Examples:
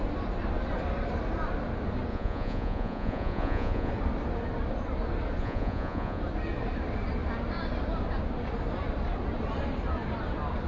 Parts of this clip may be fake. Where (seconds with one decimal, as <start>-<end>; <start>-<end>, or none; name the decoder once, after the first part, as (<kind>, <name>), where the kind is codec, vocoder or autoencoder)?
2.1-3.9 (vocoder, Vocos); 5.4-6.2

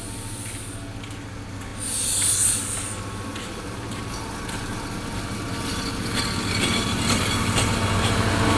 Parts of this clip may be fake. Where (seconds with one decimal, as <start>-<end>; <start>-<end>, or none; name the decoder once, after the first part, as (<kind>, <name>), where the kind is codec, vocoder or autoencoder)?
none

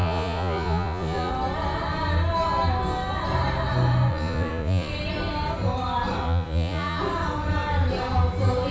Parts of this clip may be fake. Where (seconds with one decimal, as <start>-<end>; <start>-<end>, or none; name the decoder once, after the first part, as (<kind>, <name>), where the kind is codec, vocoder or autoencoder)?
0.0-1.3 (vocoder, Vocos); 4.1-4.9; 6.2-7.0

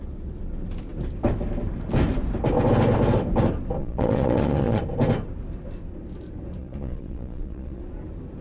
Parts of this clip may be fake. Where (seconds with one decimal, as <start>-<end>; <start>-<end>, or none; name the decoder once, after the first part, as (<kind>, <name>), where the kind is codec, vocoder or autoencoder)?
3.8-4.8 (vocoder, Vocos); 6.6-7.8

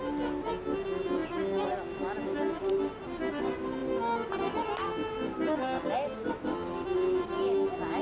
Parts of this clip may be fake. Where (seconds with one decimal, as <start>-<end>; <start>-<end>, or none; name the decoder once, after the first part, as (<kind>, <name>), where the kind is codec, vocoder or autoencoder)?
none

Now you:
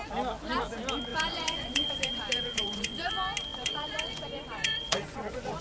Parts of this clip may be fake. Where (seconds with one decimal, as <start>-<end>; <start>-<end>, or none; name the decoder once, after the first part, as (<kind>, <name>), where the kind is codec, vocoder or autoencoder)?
1.1-3.1 (vocoder, Vocos); 3.5-5.6